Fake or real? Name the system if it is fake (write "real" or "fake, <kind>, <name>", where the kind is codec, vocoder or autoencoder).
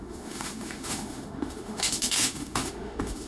fake, autoencoder, DAC-VAE